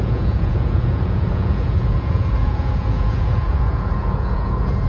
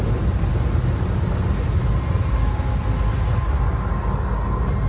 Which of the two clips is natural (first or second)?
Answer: second